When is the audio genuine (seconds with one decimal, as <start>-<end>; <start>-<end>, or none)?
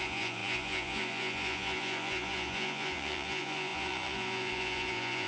none